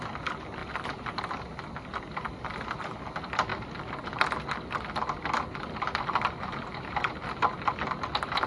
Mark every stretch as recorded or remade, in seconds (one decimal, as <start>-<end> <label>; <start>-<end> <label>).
0.0-0.6 recorded; 0.6-1.2 remade; 1.2-8.5 recorded